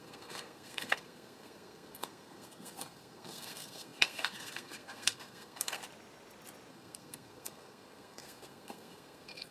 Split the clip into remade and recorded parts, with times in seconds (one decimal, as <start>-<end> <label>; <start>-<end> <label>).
0.0-5.8 remade; 5.8-6.7 recorded; 6.7-9.5 remade

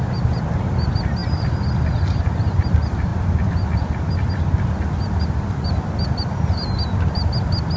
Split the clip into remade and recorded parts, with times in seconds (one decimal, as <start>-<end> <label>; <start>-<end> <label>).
0.0-7.8 recorded

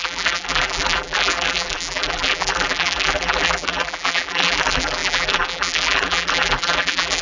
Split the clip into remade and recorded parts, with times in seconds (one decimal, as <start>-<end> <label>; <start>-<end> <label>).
0.0-7.2 remade

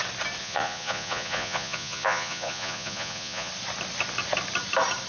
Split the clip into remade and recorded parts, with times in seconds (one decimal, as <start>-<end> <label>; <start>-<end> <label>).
0.0-0.4 recorded; 0.4-3.5 remade; 3.5-5.1 recorded

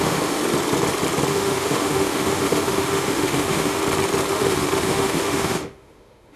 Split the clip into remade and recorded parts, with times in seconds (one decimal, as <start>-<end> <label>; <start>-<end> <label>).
0.0-0.4 remade; 0.4-1.3 recorded; 1.3-3.8 remade; 3.8-4.3 recorded; 4.3-6.4 remade

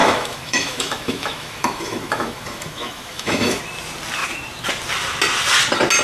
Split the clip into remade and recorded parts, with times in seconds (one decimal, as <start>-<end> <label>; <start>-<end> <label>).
0.0-3.6 remade; 3.6-6.0 recorded